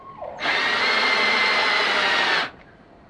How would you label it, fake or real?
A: real